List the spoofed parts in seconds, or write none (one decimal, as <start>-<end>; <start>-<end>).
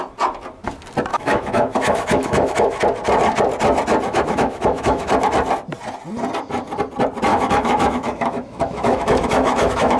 1.1-2.8; 4.1-5.1; 7.3-10.0